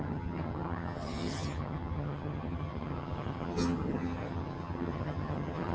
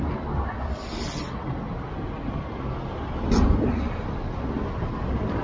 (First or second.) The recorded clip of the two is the second